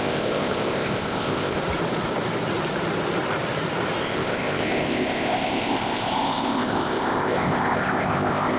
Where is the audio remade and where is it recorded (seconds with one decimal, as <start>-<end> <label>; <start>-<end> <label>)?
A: 0.0-1.6 remade; 1.6-4.0 recorded; 4.0-8.6 remade